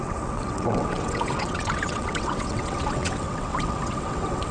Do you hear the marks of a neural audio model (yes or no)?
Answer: yes